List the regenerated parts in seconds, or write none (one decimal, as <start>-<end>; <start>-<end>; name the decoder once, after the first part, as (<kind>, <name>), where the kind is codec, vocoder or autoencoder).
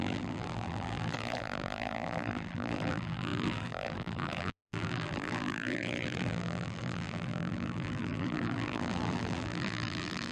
0.0-10.3 (vocoder, BigVGAN v2)